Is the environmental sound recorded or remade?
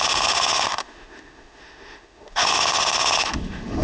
remade